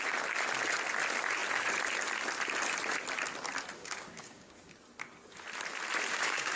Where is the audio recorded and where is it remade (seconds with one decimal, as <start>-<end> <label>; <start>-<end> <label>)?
0.0-3.8 recorded; 3.8-4.5 remade; 4.5-6.1 recorded; 6.1-6.6 remade